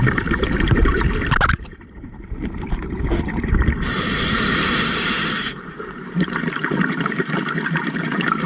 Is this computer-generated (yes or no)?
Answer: yes